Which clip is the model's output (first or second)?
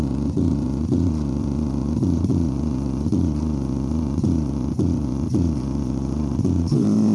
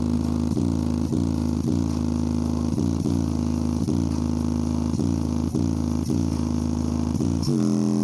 first